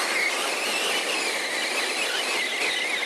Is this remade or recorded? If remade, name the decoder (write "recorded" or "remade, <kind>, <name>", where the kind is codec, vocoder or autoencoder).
recorded